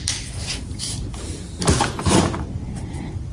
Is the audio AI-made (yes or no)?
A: no